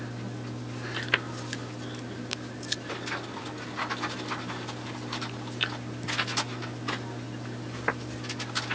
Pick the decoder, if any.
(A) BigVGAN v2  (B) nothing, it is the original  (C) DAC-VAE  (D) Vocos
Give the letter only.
B